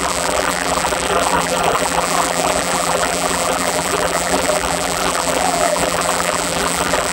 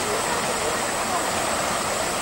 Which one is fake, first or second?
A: first